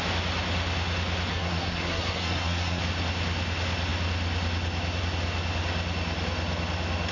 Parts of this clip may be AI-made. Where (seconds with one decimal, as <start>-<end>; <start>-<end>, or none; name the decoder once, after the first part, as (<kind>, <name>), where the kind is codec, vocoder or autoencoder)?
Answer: 1.3-2.8 (codec, SNAC)